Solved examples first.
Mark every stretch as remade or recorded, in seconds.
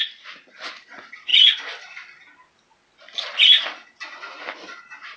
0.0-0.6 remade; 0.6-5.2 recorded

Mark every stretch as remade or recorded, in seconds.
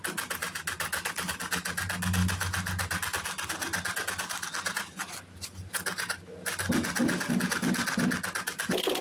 0.0-9.0 recorded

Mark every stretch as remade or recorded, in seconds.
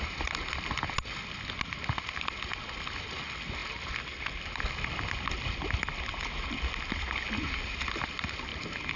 0.0-8.5 recorded; 8.5-9.0 remade